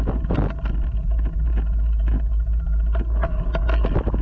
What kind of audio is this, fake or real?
real